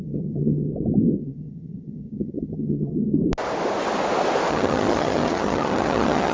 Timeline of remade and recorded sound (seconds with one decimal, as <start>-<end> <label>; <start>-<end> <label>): 0.0-0.7 remade; 0.7-1.2 recorded; 1.2-3.2 remade; 3.2-4.5 recorded; 4.5-6.3 remade